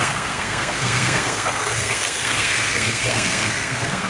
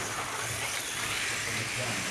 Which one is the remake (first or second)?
first